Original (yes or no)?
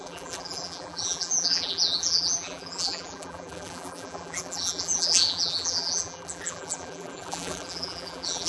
no